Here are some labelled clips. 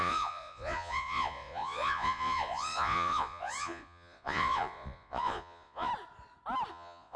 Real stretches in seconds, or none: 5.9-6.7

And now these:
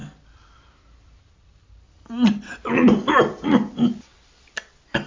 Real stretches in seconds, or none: 0.0-5.1

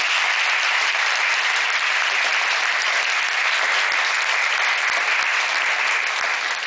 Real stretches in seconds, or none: 0.0-6.7

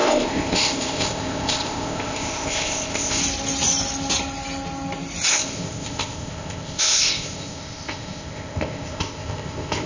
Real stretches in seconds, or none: 3.2-5.3

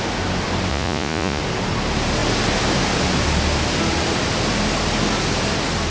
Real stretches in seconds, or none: 0.0-0.7; 1.4-5.9

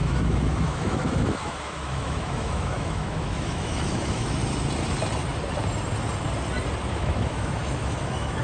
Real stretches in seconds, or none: 4.4-6.9

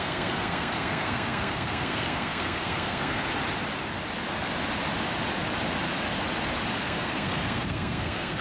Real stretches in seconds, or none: 3.2-6.8

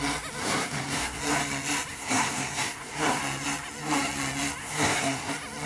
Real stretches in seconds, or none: 0.0-0.4; 1.2-1.9; 3.2-4.6; 5.3-5.7